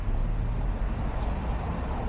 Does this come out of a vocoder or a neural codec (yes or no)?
no